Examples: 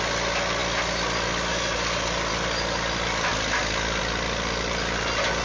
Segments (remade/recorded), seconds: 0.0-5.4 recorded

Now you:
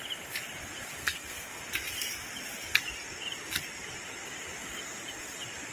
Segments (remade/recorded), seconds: 0.0-1.0 recorded; 1.0-1.6 remade; 1.6-5.7 recorded

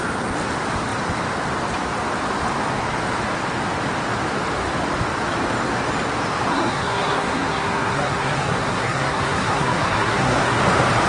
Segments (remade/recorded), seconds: 0.0-6.5 recorded; 6.5-10.6 remade; 10.6-11.1 recorded

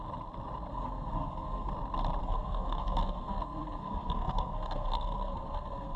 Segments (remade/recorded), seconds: 0.0-0.7 recorded; 0.7-1.7 remade; 1.7-2.2 recorded; 2.2-6.0 remade

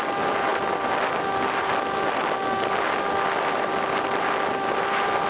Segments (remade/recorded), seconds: 0.0-5.3 recorded

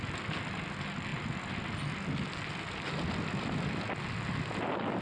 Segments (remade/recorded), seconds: 0.0-5.0 recorded

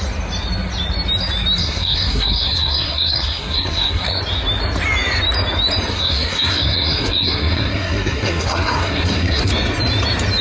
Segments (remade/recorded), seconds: 0.0-1.6 recorded; 1.6-4.2 remade; 4.2-5.9 recorded; 5.9-9.5 remade; 9.5-10.4 recorded